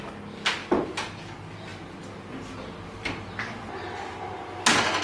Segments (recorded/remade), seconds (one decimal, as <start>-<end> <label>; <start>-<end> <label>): 0.0-5.0 recorded